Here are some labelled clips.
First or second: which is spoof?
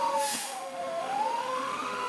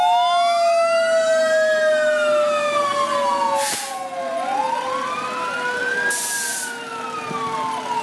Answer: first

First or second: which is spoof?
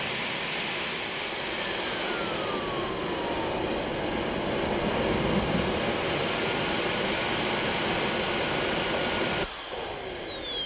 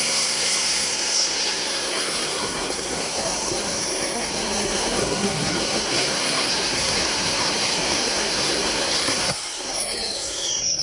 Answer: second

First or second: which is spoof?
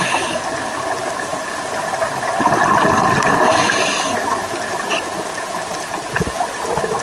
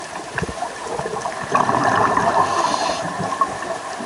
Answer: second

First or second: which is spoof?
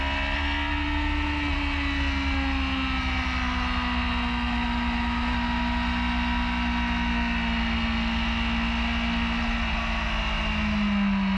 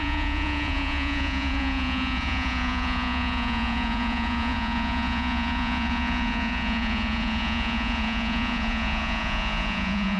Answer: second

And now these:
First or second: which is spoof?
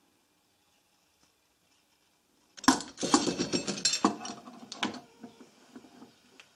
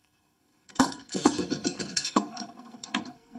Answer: second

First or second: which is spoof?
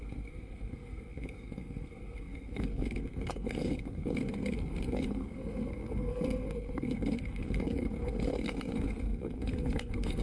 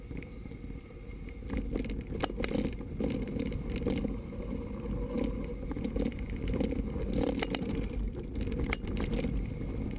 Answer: first